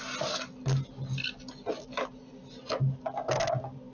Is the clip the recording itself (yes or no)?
yes